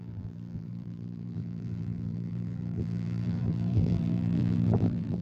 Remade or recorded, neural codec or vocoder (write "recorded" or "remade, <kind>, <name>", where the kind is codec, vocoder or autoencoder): remade, vocoder, BigVGAN v2